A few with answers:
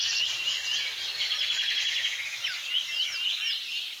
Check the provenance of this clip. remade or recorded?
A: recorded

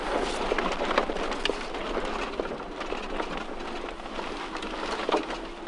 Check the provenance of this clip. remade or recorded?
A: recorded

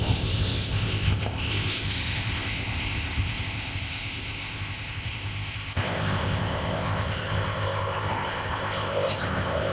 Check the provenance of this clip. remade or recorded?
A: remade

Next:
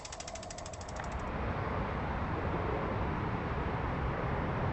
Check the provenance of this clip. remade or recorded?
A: remade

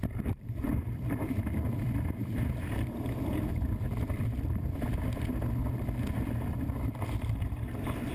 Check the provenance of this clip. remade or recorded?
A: remade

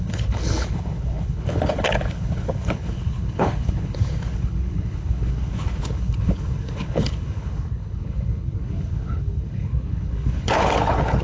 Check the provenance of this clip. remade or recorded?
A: remade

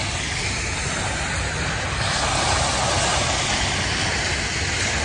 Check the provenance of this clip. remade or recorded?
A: recorded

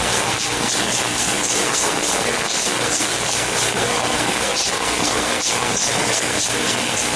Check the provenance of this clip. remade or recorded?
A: remade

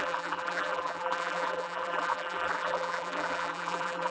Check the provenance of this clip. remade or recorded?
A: remade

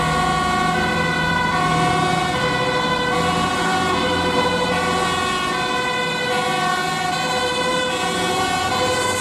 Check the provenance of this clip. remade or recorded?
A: recorded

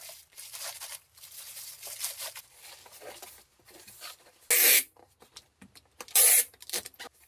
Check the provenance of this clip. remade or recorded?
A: recorded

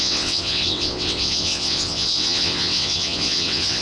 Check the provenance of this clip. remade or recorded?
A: remade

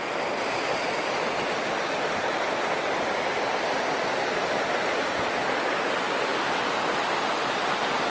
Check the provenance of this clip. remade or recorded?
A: recorded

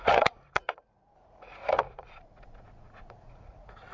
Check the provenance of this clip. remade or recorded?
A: remade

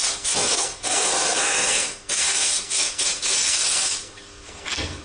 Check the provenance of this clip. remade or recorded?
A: remade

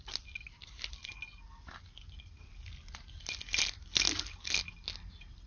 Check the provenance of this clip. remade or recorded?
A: recorded